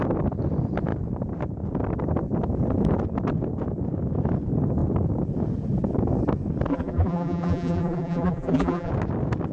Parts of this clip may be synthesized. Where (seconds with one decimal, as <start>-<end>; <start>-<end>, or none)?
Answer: 6.7-8.9